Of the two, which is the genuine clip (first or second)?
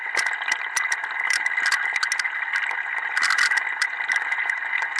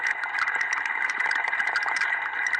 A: first